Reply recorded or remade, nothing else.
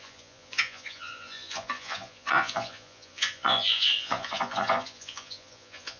remade